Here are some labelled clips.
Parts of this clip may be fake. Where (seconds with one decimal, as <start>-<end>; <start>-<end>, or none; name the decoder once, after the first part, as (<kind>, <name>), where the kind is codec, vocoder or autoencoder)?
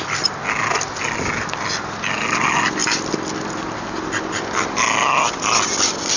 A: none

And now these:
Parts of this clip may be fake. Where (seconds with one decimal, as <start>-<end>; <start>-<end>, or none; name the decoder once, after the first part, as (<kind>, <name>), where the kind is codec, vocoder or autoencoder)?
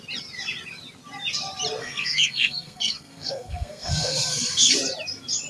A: 1.8-4.7 (codec, SNAC)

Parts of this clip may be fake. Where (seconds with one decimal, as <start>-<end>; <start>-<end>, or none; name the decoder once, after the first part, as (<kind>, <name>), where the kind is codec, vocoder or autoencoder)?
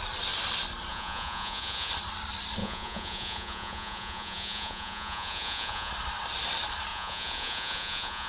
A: 0.9-1.9 (vocoder, Vocos); 2.6-5.9; 6.9-8.3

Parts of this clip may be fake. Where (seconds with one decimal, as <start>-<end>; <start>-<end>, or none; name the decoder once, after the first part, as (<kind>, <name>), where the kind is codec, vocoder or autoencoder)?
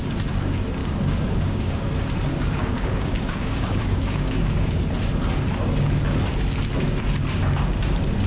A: 0.8-1.9 (codec, DAC); 2.3-4.8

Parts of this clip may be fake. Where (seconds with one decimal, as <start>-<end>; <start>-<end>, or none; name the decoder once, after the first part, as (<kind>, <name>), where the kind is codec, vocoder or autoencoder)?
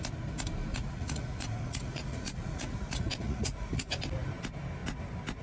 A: 0.7-3.9 (vocoder, Vocos)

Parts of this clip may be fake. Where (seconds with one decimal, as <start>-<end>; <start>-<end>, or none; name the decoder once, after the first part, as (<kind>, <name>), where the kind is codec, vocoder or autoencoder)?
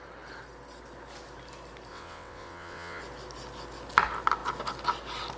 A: 1.9-3.0 (vocoder, WaveNeXt)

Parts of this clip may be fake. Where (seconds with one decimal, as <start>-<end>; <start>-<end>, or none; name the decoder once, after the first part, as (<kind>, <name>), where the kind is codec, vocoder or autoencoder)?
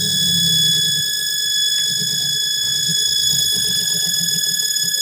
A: 2.9-4.0 (vocoder, BigVGAN v2)